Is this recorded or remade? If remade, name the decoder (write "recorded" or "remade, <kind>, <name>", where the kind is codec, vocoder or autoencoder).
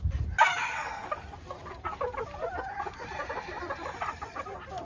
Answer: recorded